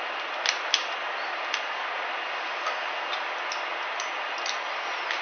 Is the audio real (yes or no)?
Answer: yes